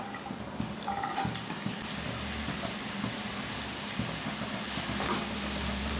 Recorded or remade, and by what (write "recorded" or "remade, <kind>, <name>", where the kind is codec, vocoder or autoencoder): recorded